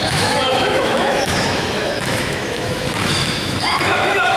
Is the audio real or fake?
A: fake